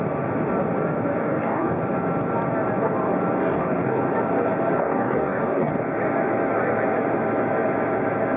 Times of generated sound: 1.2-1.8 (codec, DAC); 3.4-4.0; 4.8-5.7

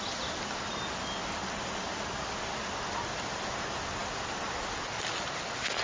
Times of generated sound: none

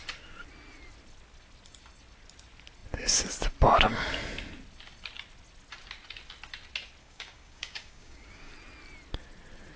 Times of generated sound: 7.0-8.5 (codec, DAC)

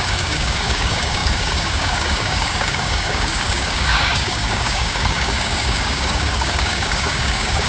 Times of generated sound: 0.0-7.7 (codec, DAC)

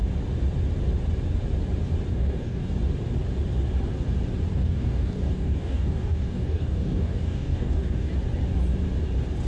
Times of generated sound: 2.1-2.7 (codec, DAC); 4.5-8.1

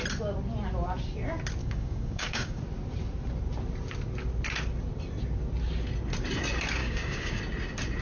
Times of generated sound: 1.6-2.6 (codec, DAC); 6.8-7.4